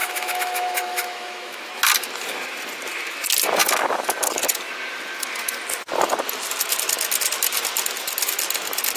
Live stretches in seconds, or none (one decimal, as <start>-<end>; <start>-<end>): 1.6-9.0